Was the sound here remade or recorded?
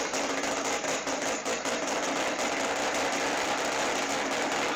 remade